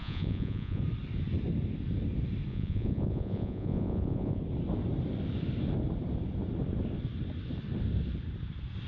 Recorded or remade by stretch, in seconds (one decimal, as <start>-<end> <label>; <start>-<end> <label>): 0.0-0.8 remade; 0.8-2.5 recorded; 2.5-4.4 remade; 4.4-8.9 recorded